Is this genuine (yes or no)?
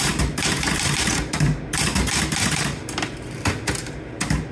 no